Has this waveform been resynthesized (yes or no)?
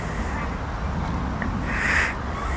no